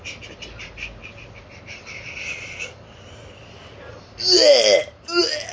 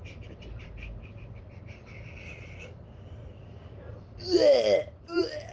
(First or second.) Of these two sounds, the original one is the first